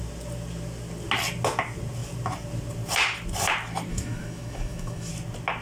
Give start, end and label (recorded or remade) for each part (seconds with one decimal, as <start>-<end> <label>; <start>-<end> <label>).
0.0-3.9 recorded; 3.9-5.1 remade; 5.1-5.6 recorded

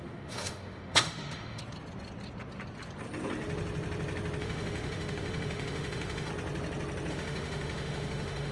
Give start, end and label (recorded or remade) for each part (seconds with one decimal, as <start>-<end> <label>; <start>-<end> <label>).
0.0-1.6 remade; 1.6-4.4 recorded; 4.4-6.3 remade; 6.3-7.1 recorded; 7.1-8.5 remade